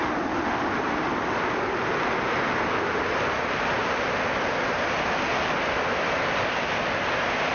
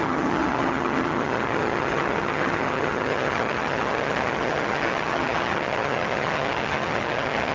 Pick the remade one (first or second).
second